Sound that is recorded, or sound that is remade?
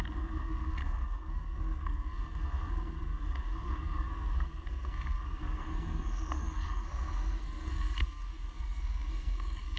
remade